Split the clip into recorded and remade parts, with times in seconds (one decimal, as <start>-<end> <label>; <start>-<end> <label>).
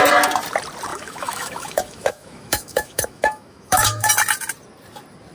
0.0-0.9 recorded; 0.9-4.1 remade; 4.1-5.3 recorded